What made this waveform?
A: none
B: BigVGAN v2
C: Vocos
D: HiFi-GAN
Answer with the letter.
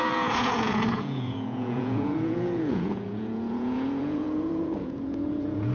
C